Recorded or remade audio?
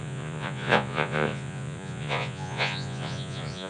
remade